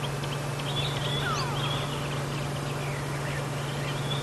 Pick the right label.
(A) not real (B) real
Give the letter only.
B